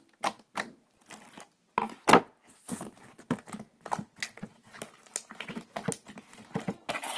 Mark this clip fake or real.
real